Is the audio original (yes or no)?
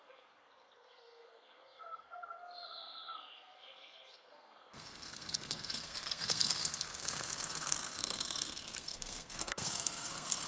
no